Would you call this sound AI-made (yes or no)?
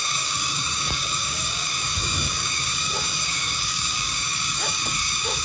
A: yes